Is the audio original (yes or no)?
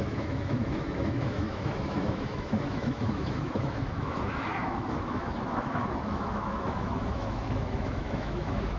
no